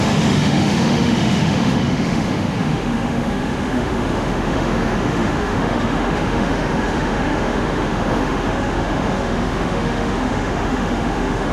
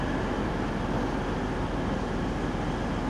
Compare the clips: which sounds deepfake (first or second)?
first